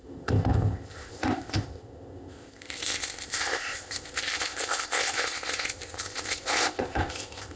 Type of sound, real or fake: fake